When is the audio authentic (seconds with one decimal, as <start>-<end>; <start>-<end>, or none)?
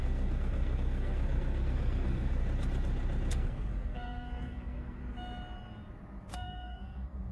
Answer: 2.4-3.3; 5.0-6.3